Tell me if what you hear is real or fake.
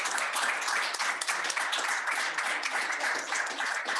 real